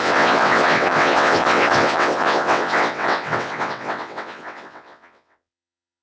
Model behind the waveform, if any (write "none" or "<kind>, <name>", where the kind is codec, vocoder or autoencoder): vocoder, WaveNeXt